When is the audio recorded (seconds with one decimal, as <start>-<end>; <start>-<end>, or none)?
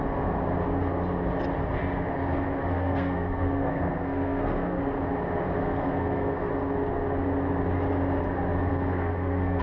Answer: 0.0-2.7; 4.8-5.6; 6.5-8.7